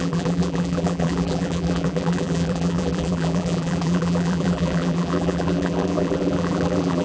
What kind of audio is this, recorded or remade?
remade